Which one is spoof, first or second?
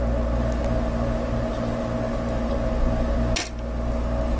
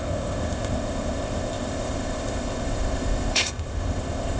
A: second